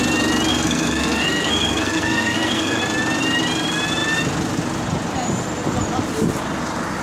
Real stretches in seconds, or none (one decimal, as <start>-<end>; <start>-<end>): 0.0-0.5; 2.8-7.0